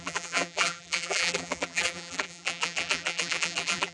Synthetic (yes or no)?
yes